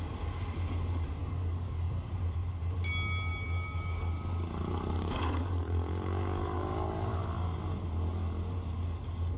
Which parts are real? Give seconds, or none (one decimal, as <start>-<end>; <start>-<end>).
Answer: 0.0-1.2; 2.1-3.3; 7.2-9.4